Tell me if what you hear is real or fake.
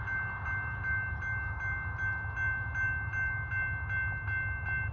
real